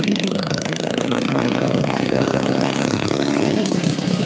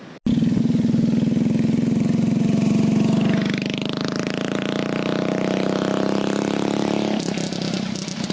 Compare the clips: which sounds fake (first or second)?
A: first